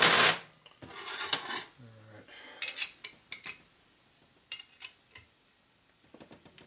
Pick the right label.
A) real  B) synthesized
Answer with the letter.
A